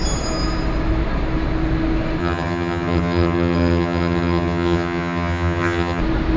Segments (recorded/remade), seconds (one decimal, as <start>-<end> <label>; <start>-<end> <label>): 0.0-2.2 recorded; 2.2-6.0 remade; 6.0-6.4 recorded